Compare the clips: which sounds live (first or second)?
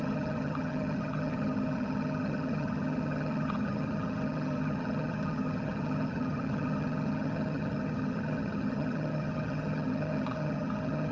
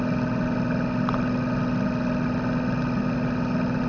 second